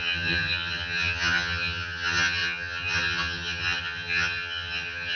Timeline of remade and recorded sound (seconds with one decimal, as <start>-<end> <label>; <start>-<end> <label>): 0.0-5.2 remade